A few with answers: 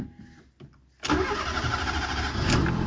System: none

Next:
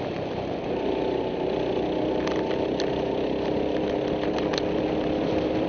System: none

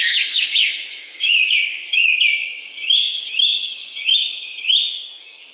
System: codec, DAC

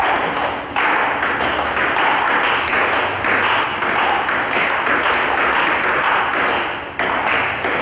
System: none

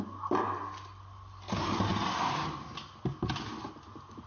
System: none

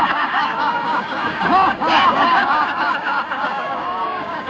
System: codec, DAC